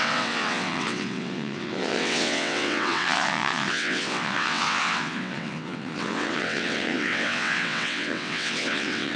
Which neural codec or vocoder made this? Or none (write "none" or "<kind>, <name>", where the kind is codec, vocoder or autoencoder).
vocoder, WaveNeXt